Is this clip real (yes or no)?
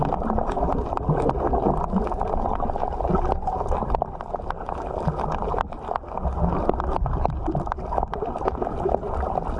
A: yes